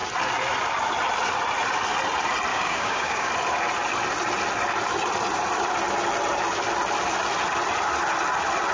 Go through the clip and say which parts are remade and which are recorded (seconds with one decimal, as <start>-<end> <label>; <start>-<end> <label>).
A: 0.0-2.5 recorded; 2.5-3.3 remade; 3.3-8.7 recorded